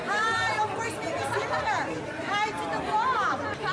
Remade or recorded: remade